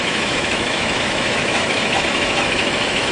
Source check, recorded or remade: remade